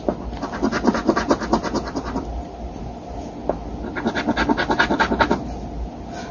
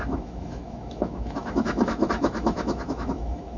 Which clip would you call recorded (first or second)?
first